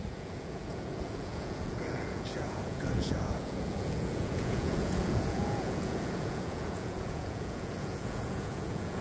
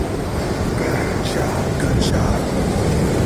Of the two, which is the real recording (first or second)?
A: second